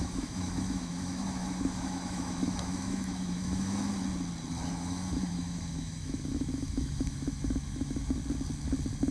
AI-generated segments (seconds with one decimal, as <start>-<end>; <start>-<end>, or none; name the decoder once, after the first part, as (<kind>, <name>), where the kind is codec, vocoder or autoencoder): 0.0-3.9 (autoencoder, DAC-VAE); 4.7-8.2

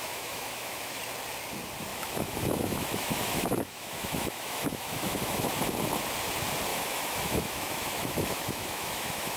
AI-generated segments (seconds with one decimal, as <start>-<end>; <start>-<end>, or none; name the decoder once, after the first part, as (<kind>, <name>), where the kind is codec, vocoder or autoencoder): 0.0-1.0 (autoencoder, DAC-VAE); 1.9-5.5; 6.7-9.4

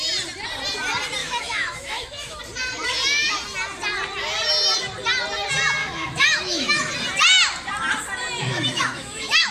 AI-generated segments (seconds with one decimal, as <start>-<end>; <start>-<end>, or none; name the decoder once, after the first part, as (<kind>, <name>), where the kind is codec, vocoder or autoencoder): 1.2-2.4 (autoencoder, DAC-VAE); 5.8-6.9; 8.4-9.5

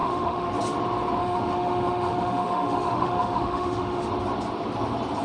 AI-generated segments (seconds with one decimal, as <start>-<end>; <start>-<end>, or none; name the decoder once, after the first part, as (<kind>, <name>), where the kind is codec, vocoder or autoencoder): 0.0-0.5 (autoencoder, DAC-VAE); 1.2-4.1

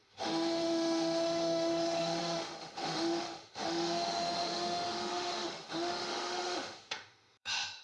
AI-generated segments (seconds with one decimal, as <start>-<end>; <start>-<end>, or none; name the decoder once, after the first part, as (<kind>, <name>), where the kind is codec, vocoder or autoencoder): 0.0-7.8 (autoencoder, DAC-VAE)

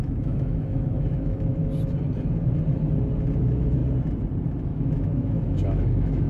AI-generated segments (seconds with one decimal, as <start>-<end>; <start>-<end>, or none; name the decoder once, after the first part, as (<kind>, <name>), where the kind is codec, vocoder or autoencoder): 0.0-1.6 (autoencoder, DAC-VAE); 3.4-3.8; 4.7-6.3